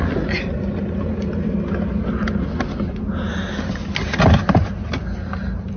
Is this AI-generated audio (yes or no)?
no